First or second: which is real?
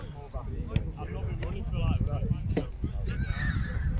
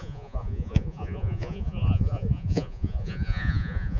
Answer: first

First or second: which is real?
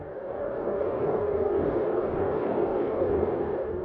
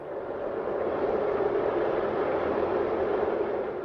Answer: second